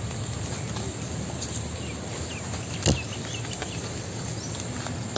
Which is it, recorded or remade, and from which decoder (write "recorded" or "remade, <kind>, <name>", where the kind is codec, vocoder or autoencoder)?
recorded